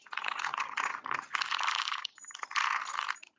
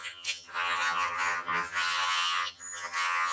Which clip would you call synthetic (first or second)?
second